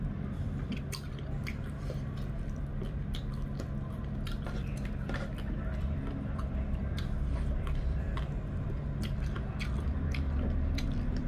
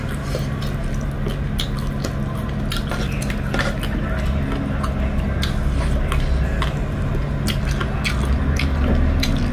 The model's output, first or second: first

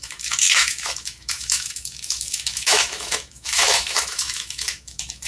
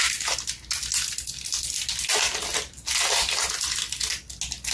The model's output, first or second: first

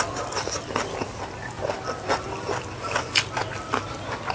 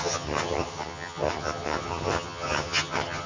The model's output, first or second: second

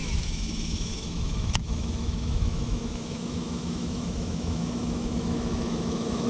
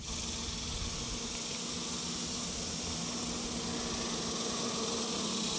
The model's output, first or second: first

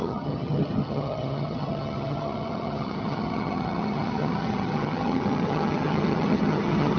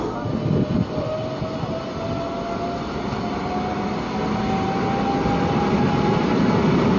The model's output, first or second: first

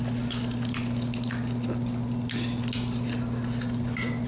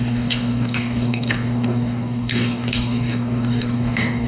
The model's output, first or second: second